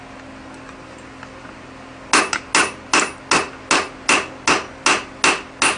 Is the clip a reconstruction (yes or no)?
no